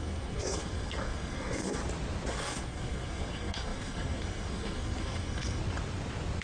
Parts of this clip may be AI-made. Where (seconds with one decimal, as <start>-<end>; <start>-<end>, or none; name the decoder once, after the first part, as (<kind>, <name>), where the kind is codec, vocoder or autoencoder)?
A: 0.0-1.8 (codec, SNAC); 2.3-5.6